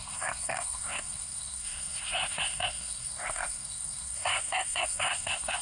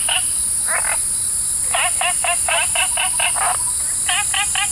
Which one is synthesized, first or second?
first